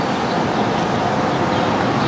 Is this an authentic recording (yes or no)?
yes